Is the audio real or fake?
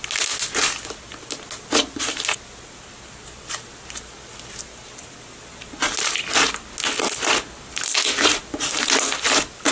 real